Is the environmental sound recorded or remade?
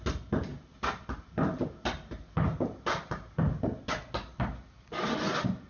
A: recorded